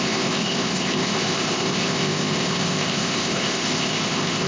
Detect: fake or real fake